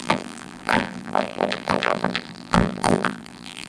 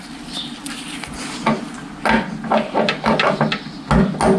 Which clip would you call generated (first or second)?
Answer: first